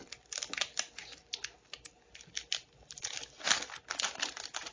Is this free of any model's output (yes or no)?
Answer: yes